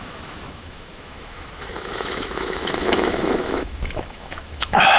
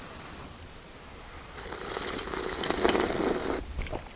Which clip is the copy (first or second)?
first